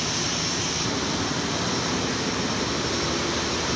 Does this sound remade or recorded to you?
recorded